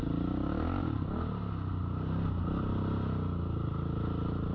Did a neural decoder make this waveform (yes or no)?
no